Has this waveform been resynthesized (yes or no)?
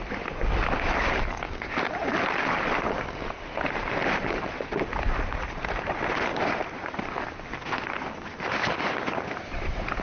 no